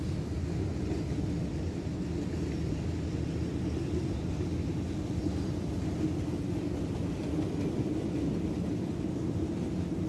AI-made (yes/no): no